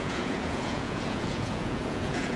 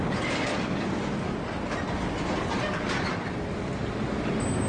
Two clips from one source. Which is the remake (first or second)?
first